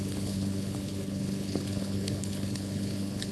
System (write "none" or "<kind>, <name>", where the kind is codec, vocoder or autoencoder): codec, HILCodec